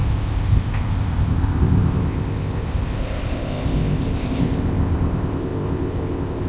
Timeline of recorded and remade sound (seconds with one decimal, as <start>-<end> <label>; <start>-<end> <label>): 0.0-6.5 remade